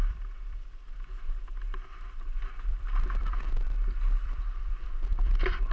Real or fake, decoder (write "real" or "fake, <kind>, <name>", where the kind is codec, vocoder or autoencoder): fake, vocoder, BigVGAN v2